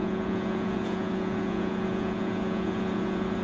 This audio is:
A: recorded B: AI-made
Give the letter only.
B